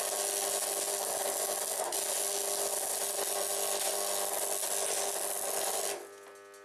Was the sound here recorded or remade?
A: recorded